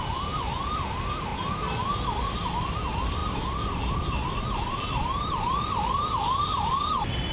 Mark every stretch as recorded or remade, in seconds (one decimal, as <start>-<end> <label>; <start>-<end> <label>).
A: 0.0-1.3 remade; 1.3-2.2 recorded; 2.2-7.3 remade